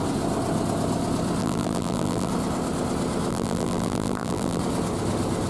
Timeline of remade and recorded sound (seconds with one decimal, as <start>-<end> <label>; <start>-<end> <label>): 0.0-1.4 recorded; 1.4-2.3 remade; 2.3-3.3 recorded; 3.3-4.6 remade; 4.6-5.5 recorded

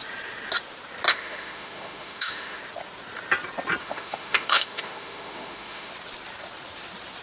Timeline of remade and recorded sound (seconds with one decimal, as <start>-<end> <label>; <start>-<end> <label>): 0.0-1.1 recorded; 1.1-2.6 remade; 2.6-3.8 recorded; 3.8-5.9 remade; 5.9-7.2 recorded

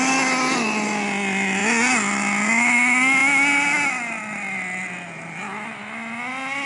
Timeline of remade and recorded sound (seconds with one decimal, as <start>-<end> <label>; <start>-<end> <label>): 0.0-6.7 recorded

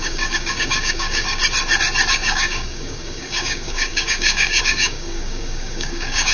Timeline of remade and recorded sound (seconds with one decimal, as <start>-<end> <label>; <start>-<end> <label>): 0.0-1.4 remade; 1.4-2.1 recorded; 2.1-6.3 remade

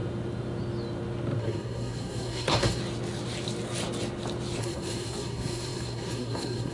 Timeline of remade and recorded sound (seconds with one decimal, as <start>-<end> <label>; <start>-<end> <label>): 0.0-1.4 recorded; 1.4-2.8 remade; 2.8-4.6 recorded; 4.6-6.7 remade

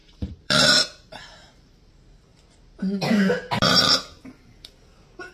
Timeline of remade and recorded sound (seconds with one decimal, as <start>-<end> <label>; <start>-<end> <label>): 0.0-1.9 remade; 1.9-5.3 recorded